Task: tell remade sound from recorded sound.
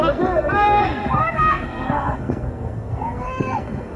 remade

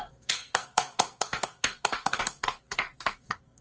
remade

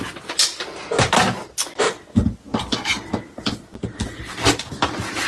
recorded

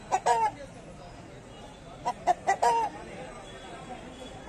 recorded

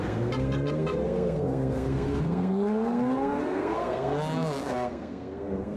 remade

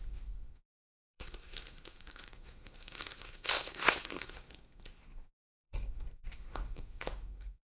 remade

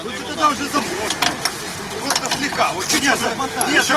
recorded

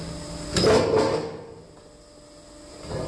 recorded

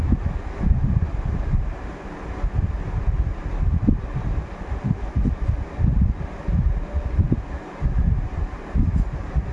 recorded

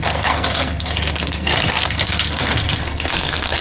remade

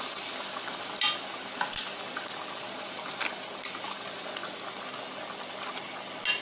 recorded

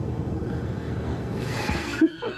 remade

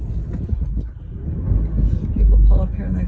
recorded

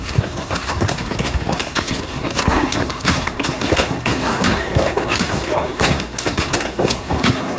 remade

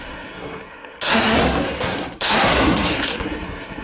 remade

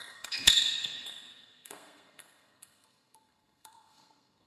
remade